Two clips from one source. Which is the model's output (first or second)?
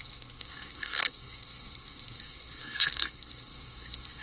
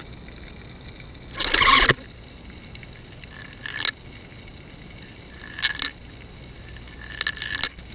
first